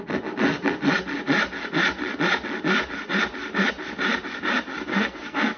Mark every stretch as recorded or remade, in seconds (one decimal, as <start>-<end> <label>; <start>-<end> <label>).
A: 0.0-4.9 recorded; 4.9-5.6 remade

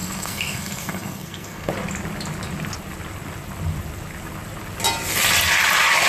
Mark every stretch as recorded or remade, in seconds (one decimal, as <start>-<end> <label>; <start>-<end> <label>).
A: 0.0-1.7 remade; 1.7-6.1 recorded

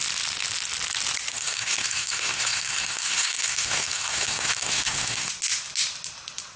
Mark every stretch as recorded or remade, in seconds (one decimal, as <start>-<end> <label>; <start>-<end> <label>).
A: 0.0-1.3 recorded; 1.3-5.3 remade; 5.3-6.6 recorded

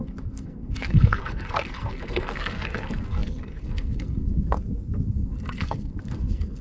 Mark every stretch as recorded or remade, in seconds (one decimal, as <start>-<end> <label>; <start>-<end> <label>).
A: 0.0-6.6 remade

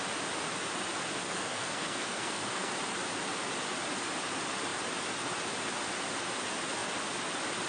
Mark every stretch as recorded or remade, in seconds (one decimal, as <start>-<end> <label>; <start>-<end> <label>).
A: 0.0-1.2 recorded; 1.2-2.7 remade; 2.7-7.7 recorded

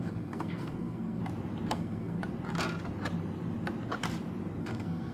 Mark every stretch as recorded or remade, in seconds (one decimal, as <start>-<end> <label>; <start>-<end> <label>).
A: 0.0-1.2 remade; 1.2-1.7 recorded; 1.7-2.2 remade; 2.2-4.6 recorded; 4.6-5.1 remade

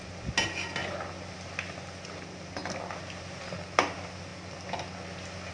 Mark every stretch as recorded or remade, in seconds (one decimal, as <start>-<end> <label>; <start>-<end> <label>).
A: 0.0-5.5 recorded